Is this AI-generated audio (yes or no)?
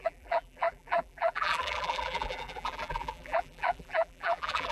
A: yes